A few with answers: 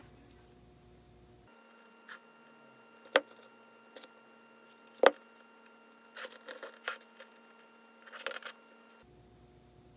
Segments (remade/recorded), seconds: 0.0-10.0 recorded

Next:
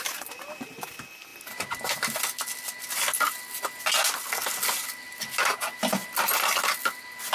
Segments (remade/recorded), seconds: 0.0-7.3 recorded

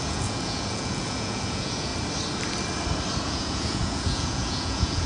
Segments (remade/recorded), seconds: 0.0-1.9 remade; 1.9-3.2 recorded; 3.2-5.1 remade